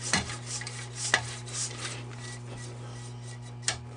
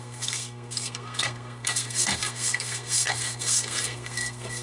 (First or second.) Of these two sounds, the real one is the first